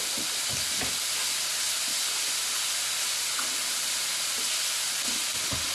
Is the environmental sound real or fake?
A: real